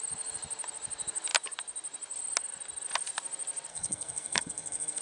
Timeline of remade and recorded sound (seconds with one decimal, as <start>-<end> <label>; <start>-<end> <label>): 0.0-3.7 recorded; 3.7-5.0 remade